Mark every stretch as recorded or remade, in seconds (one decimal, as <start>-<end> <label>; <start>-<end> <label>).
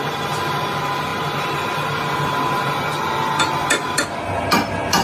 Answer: 0.0-5.0 recorded